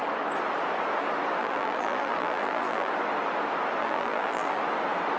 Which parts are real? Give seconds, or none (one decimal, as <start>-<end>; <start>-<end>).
0.0-1.4; 2.9-3.8; 4.6-5.2